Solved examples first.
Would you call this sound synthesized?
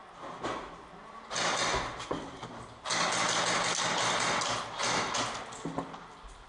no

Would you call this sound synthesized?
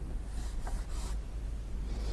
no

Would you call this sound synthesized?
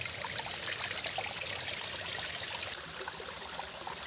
no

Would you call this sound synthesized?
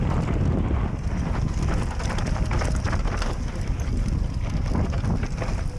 no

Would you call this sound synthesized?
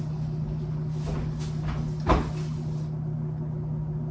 no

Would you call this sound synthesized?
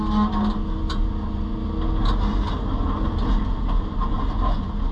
no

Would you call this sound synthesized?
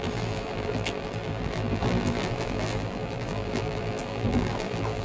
yes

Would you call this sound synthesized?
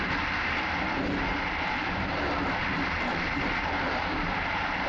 yes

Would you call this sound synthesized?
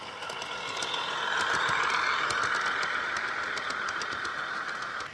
no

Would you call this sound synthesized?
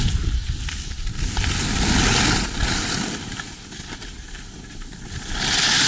no